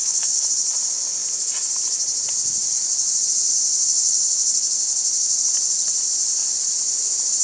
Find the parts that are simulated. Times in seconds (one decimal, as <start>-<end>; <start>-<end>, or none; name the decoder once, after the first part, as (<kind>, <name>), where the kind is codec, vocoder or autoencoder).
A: 0.0-0.5 (autoencoder, DAC-VAE)